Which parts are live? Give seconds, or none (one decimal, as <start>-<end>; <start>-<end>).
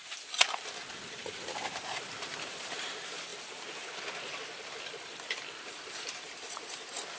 0.0-1.8; 3.3-4.4